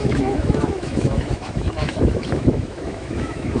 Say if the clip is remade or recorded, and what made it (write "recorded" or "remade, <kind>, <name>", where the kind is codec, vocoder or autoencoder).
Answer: remade, autoencoder, DAC-VAE